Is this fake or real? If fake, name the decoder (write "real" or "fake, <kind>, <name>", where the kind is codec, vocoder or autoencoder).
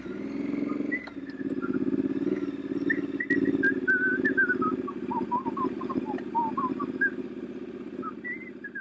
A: real